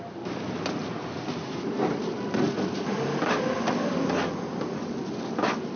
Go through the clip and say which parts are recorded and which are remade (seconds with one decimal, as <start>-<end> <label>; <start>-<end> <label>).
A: 0.0-5.8 recorded